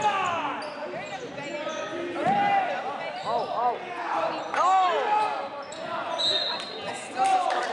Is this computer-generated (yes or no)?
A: no